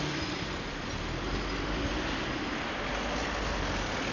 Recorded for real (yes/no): yes